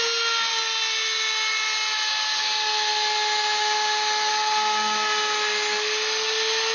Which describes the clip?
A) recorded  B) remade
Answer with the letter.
A